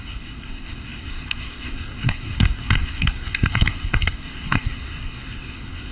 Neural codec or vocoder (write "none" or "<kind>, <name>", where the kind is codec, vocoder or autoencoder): codec, SNAC